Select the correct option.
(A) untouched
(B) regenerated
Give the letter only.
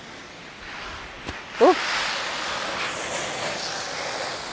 A